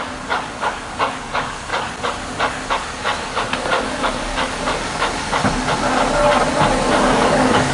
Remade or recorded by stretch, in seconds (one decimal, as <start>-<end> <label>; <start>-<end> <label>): 0.0-1.7 remade; 1.7-2.7 recorded; 2.7-5.4 remade; 5.4-6.9 recorded; 6.9-7.7 remade